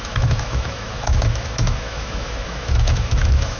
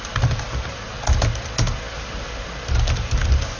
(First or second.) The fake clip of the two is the first